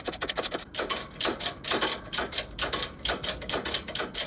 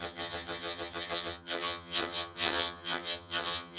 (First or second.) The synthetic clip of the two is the second